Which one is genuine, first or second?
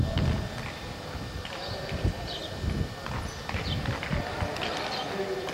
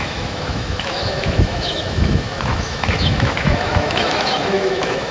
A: first